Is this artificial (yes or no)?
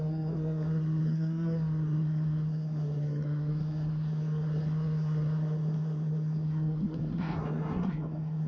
yes